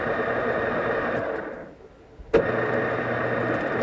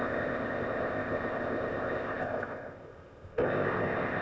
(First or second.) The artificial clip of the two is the second